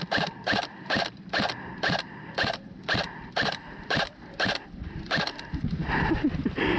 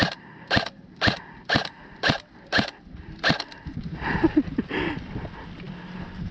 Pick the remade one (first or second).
first